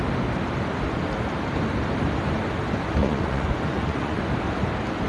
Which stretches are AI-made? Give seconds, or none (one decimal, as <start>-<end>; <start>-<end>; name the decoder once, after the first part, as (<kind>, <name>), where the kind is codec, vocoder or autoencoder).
3.0-4.2 (vocoder, Vocos)